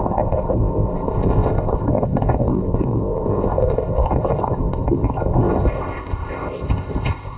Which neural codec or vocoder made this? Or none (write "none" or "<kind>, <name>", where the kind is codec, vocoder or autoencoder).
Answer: codec, ZipCodec